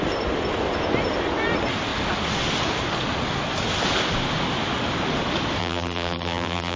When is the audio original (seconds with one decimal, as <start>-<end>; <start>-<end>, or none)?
0.0-5.6

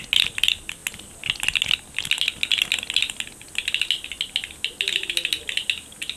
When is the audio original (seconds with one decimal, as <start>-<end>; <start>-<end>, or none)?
0.0-6.2

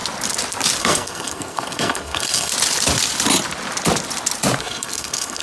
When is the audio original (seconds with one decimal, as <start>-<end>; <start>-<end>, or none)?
0.0-0.8; 2.5-4.6

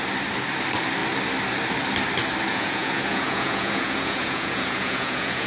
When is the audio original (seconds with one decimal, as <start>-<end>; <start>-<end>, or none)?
0.0-2.5

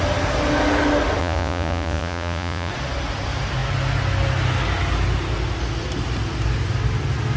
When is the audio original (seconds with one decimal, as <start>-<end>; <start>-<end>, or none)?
0.0-1.2; 2.7-7.4